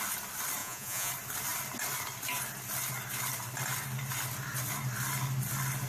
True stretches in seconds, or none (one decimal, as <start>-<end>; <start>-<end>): 0.0-0.6; 1.1-5.9